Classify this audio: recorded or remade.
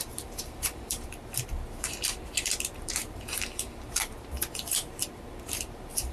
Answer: remade